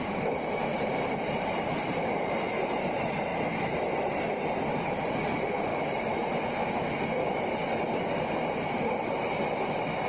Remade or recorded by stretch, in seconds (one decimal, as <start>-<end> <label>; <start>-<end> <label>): 0.0-0.7 recorded; 0.7-1.3 remade; 1.3-3.3 recorded; 3.3-4.1 remade; 4.1-5.7 recorded; 5.7-6.4 remade; 6.4-10.1 recorded